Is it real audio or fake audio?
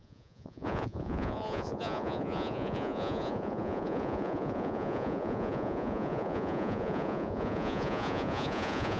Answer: fake